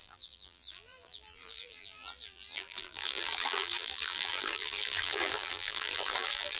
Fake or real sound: fake